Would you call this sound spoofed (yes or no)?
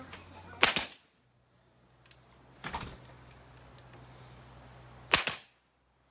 no